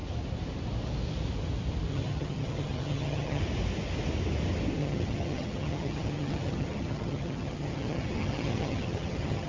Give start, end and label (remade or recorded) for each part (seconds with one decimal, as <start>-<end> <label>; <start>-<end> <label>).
0.0-1.9 recorded; 1.9-3.4 remade; 3.4-4.8 recorded; 4.8-9.5 remade